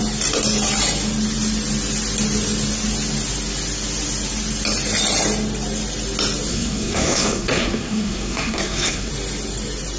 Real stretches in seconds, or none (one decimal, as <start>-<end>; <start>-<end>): 0.0-6.5; 9.1-10.0